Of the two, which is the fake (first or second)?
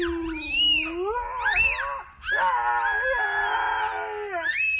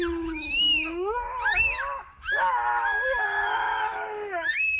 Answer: second